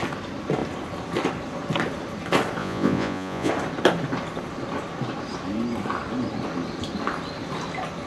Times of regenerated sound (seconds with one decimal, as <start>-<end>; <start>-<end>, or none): 2.6-3.5

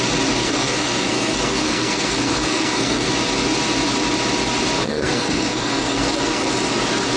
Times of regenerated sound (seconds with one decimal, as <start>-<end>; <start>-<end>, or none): 0.4-3.1; 4.8-6.5

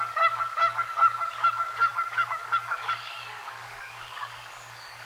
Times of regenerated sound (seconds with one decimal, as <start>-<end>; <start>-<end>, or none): 0.0-5.0

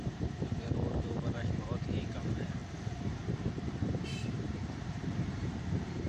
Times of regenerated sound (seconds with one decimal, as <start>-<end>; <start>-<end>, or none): 0.0-6.1

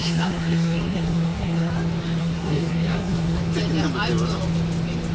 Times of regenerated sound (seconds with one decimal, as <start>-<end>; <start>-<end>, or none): 0.0-1.7; 2.2-3.4

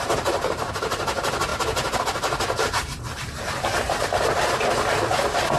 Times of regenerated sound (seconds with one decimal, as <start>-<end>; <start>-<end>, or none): none

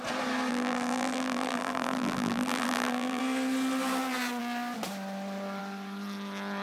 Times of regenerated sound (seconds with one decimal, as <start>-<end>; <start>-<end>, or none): 0.5-3.2

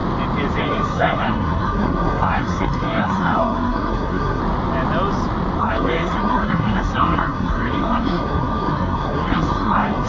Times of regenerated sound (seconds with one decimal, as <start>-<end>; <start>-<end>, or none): 0.6-4.4; 5.6-10.1